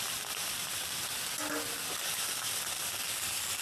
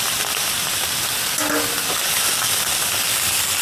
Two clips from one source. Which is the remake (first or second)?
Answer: first